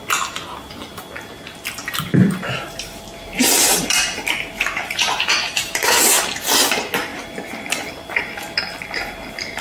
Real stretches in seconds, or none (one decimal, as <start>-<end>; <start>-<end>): 0.0-1.8; 6.1-9.6